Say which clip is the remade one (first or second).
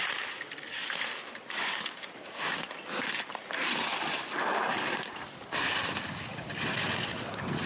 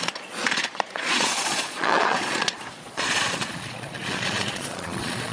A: second